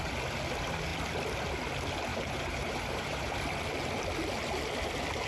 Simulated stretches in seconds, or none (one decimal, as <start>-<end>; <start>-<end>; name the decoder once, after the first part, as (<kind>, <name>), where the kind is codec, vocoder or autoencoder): 2.1-3.4 (vocoder, BigVGAN v2)

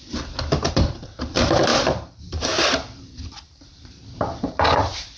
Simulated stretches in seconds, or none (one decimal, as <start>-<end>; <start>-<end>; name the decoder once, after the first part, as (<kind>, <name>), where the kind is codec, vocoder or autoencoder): 0.0-4.0 (vocoder, BigVGAN v2); 4.5-5.2

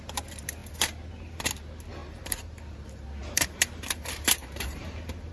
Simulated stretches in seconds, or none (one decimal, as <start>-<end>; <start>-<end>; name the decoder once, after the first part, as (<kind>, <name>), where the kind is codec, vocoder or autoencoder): 2.0-2.6 (vocoder, BigVGAN v2); 3.2-5.3

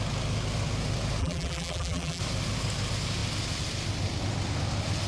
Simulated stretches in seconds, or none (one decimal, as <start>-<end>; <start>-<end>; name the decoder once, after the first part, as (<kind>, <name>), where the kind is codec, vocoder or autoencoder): 1.2-2.2 (vocoder, BigVGAN v2)

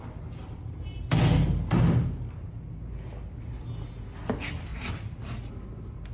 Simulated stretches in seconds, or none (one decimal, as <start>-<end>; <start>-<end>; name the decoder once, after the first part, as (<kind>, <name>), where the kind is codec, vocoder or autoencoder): 4.7-5.5 (vocoder, BigVGAN v2)

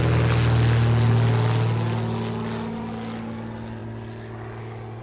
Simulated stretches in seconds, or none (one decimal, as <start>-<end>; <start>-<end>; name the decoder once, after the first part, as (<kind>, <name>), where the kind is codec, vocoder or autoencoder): none

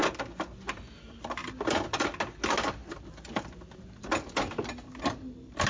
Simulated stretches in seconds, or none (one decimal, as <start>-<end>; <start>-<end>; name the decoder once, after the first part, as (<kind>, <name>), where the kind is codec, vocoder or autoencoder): none

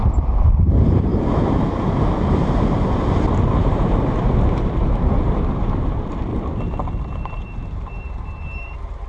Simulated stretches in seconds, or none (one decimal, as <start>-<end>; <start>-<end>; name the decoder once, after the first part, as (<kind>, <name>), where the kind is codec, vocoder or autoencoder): 0.0-1.1 (vocoder, BigVGAN v2); 3.5-6.3; 6.8-9.1